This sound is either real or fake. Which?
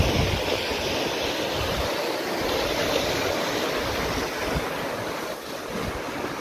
real